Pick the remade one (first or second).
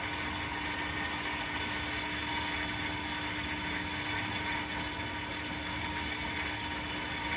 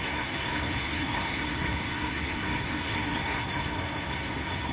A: second